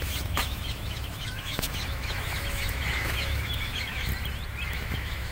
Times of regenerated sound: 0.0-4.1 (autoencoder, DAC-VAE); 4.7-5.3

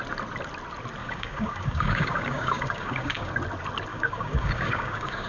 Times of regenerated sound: 1.0-3.3 (codec, DAC); 3.9-5.3